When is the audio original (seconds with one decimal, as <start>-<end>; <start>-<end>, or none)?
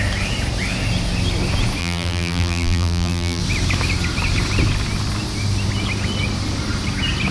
0.0-1.8; 3.4-7.3